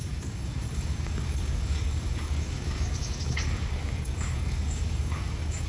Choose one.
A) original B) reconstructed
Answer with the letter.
B